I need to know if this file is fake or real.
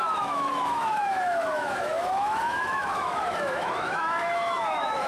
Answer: fake